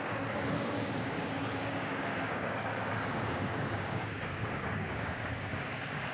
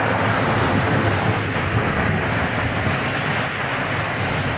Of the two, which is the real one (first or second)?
second